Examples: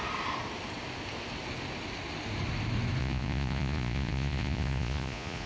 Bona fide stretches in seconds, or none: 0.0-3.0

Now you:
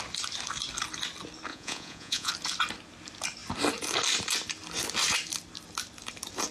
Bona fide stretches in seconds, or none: 0.0-1.5; 2.3-6.5

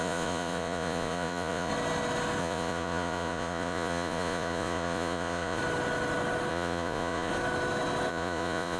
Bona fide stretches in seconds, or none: 1.7-2.4; 5.6-6.5; 7.3-8.1

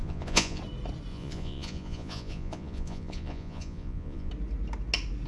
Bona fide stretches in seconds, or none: 0.6-1.1; 4.3-5.3

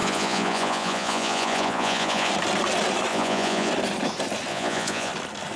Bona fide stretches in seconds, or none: 2.3-3.1; 3.7-4.5; 5.1-5.6

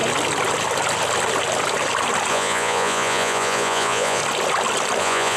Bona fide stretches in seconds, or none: 0.0-2.3; 4.2-5.0